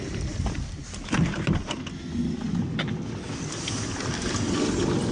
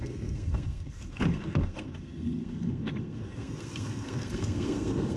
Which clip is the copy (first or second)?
second